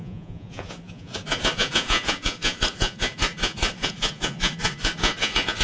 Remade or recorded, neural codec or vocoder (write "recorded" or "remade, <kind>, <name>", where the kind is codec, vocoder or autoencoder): remade, vocoder, Vocos